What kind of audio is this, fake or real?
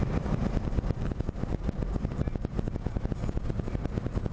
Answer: real